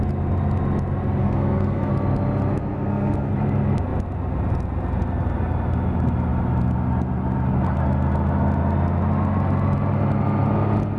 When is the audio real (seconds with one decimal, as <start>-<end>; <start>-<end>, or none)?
0.0-1.2; 1.9-2.5; 3.3-11.0

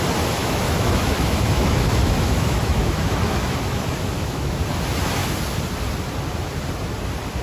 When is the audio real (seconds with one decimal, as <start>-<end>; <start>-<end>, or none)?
0.0-0.4; 4.5-7.4

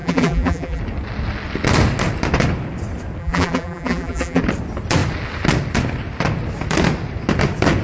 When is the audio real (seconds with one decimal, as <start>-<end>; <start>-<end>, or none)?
0.8-3.2; 4.4-7.8

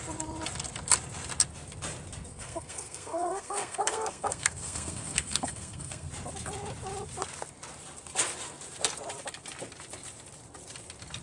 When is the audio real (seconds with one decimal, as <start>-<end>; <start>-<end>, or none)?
0.0-2.3; 6.1-11.2

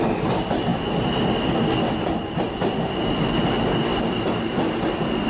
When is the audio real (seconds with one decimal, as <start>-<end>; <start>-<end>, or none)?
0.0-3.9; 4.4-5.3

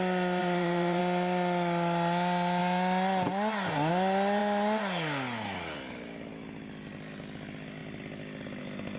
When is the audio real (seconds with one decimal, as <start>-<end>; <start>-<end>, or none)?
0.0-0.4; 1.0-9.0

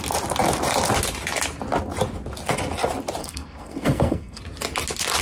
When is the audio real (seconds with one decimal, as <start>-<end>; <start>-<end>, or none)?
0.0-3.2; 4.4-5.2